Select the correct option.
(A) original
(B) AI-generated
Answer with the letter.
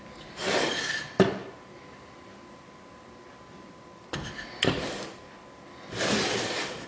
A